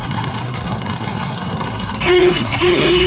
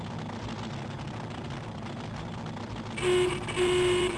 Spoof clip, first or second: first